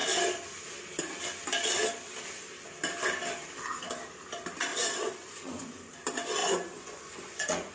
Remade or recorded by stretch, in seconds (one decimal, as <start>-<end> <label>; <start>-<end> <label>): 0.0-4.7 recorded; 4.7-5.9 remade; 5.9-6.4 recorded; 6.4-7.7 remade